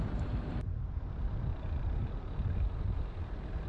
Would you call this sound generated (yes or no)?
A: yes